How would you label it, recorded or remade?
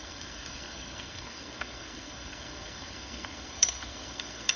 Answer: remade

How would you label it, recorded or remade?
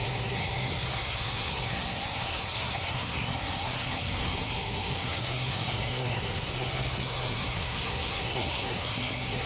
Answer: remade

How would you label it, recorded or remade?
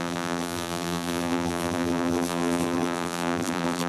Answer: remade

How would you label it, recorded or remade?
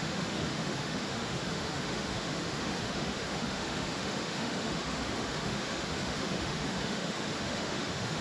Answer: remade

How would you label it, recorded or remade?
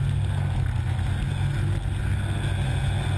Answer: recorded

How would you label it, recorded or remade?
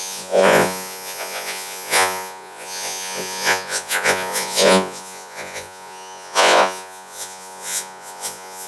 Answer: remade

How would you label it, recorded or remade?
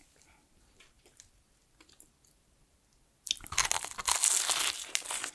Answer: recorded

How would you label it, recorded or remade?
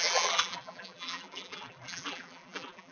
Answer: remade